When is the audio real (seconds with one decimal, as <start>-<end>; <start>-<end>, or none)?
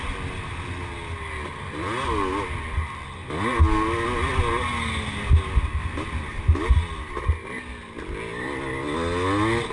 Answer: 0.0-9.7